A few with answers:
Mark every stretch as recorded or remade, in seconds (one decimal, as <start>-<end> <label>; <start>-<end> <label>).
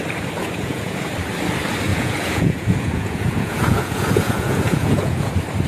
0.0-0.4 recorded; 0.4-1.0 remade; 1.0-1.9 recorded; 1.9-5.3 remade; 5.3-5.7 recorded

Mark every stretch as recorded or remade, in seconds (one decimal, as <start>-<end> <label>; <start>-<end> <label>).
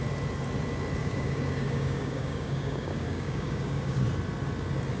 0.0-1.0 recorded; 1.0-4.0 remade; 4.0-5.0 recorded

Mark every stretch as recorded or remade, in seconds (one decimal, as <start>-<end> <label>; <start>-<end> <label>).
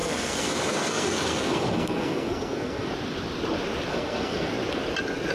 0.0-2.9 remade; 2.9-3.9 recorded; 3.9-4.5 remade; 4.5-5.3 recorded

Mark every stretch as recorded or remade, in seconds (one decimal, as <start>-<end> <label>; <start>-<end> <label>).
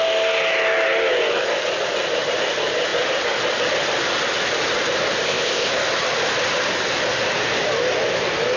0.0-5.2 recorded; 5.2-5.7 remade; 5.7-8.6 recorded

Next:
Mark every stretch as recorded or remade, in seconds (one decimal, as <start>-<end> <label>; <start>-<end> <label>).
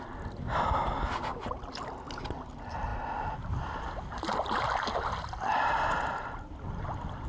0.0-7.3 recorded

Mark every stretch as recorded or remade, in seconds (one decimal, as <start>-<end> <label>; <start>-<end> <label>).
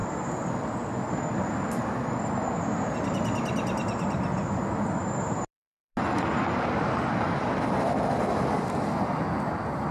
0.0-9.9 recorded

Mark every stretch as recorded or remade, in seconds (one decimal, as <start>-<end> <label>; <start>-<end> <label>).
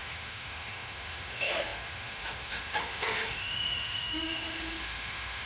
0.0-5.5 remade